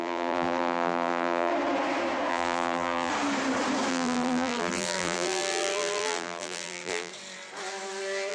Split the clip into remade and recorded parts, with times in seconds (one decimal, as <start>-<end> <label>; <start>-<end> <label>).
0.0-1.5 remade; 1.5-2.3 recorded; 2.3-3.1 remade; 3.1-3.9 recorded; 3.9-7.1 remade; 7.1-8.3 recorded